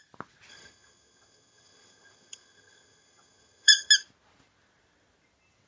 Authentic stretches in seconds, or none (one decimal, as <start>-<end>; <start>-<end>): 0.0-0.5; 3.9-5.7